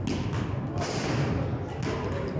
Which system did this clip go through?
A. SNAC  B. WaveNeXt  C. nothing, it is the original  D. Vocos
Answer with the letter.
C